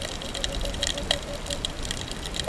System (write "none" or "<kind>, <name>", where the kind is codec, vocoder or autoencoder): none